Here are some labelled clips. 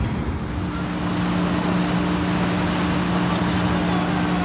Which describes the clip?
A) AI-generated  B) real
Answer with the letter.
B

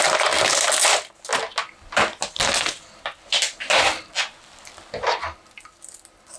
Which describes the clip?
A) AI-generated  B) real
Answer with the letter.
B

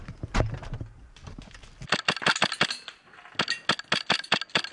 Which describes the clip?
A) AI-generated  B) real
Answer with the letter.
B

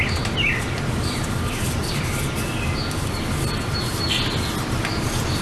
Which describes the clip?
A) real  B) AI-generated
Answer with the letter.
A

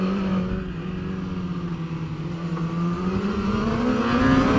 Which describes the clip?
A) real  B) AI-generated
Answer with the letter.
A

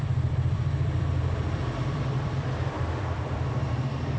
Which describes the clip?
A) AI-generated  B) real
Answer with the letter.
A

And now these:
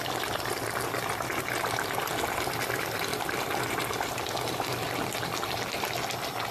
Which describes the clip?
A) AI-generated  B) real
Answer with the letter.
B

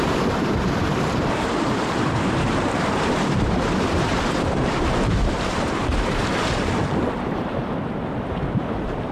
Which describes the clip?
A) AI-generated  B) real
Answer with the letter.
A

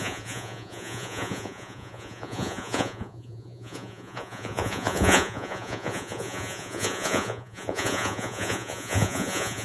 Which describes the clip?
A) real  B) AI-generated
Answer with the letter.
B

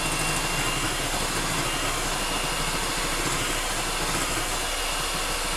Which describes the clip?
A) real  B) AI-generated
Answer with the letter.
A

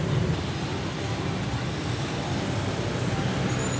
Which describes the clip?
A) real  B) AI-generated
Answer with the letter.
A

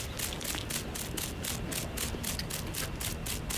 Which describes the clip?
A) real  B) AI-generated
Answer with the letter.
A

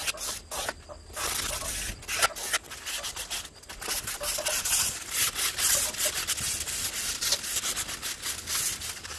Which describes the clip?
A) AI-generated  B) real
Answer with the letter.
B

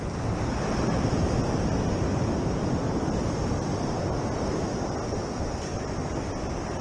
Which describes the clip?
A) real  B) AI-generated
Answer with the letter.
A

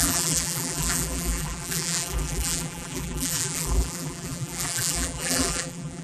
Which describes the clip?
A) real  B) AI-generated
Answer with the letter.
B